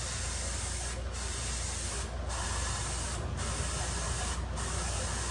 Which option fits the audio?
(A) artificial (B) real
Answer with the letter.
B